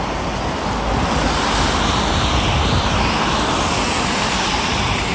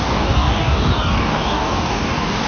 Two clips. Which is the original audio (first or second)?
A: first